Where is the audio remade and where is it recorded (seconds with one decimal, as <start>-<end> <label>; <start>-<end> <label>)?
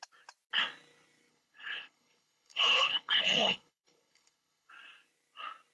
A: 0.0-1.3 recorded; 1.3-4.7 remade; 4.7-5.7 recorded